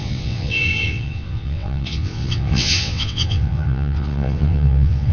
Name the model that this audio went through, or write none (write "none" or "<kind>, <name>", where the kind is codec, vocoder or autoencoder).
vocoder, WaveNeXt